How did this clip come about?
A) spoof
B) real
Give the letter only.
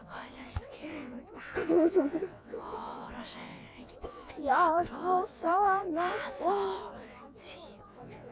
A